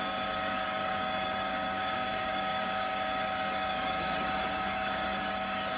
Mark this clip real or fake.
fake